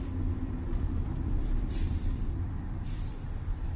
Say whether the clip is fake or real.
fake